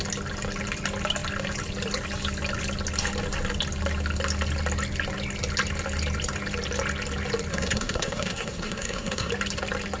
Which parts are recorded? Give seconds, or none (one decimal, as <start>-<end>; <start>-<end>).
0.0-7.5; 9.3-10.0